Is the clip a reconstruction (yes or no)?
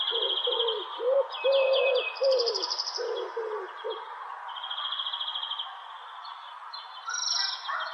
no